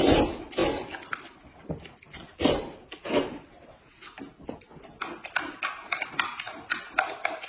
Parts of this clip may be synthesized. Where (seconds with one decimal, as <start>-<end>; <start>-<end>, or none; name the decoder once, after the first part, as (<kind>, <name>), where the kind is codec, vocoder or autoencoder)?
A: none